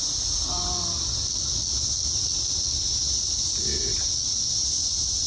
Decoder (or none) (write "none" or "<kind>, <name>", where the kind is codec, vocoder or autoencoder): none